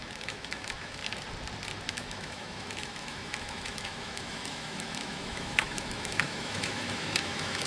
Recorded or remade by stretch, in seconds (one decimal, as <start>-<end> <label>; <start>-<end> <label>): 0.0-1.0 remade; 1.0-1.9 recorded; 1.9-7.7 remade